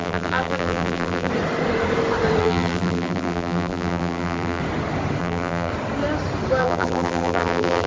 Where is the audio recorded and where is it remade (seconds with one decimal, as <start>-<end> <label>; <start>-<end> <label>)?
0.0-1.3 remade; 1.3-2.4 recorded; 2.4-4.6 remade; 4.6-5.2 recorded; 5.2-5.7 remade; 5.7-6.6 recorded; 6.6-7.9 remade